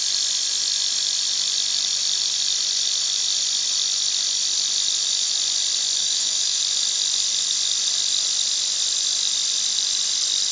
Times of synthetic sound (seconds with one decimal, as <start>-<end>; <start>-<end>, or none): 6.0-6.6